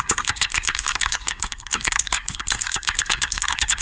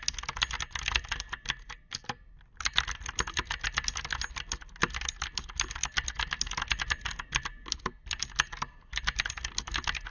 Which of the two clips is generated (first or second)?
first